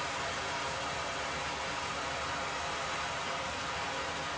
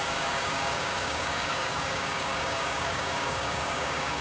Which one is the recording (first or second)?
first